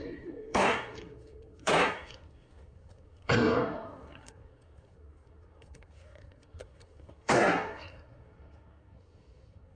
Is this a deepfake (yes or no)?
yes